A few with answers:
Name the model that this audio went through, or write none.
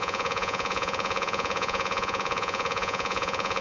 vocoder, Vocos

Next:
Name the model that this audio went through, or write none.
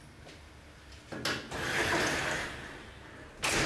none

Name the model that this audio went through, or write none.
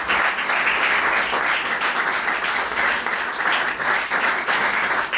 none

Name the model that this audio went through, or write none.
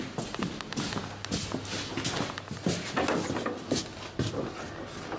none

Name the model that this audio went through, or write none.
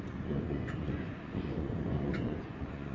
vocoder, Vocos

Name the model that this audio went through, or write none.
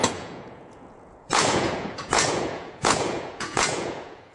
vocoder, Vocos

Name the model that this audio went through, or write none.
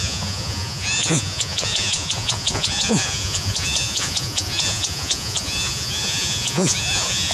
vocoder, Vocos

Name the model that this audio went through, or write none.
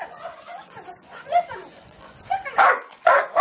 vocoder, Vocos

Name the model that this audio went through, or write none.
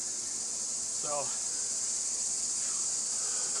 none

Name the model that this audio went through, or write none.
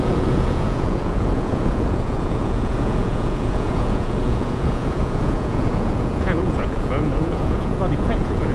vocoder, Vocos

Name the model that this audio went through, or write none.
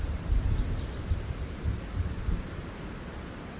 none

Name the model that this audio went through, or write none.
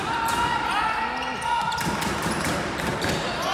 none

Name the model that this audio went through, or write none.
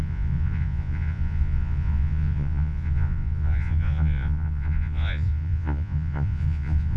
vocoder, Vocos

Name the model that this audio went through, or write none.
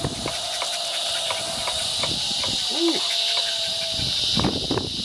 none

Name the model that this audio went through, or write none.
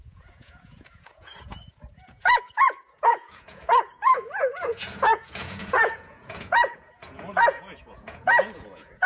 vocoder, Vocos